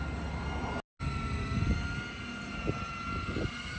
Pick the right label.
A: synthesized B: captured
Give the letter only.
B